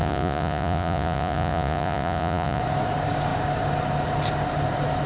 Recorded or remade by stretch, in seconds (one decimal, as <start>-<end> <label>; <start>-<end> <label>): 0.0-2.6 remade; 2.6-5.1 recorded